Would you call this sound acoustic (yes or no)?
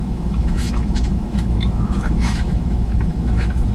no